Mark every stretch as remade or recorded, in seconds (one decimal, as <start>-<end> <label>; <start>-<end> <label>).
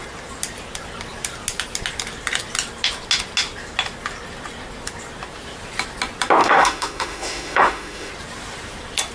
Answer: 0.0-6.4 recorded; 6.4-8.1 remade; 8.1-9.1 recorded